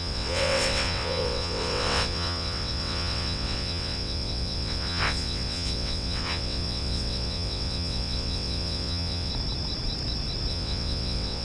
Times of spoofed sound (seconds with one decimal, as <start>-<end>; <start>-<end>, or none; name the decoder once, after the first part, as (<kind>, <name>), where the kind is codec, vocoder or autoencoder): 0.0-9.3 (vocoder, WaveNeXt); 10.5-11.4